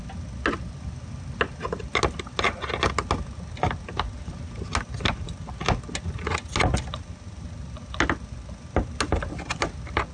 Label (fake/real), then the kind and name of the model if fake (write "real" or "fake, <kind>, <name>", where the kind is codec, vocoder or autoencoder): real